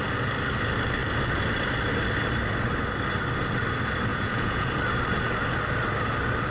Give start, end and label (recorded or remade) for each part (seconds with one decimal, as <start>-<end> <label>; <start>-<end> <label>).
0.0-4.1 recorded; 4.1-4.7 remade; 4.7-6.5 recorded